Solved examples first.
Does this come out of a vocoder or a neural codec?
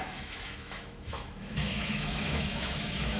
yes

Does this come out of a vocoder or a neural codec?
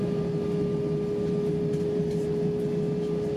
no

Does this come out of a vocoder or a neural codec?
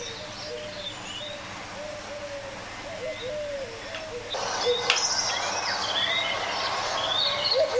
no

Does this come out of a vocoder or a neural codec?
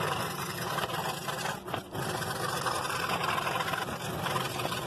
yes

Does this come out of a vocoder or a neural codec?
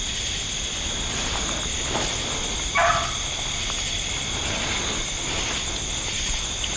no